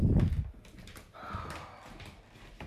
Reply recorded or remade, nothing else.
recorded